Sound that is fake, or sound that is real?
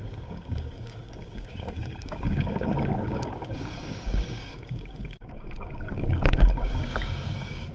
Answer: fake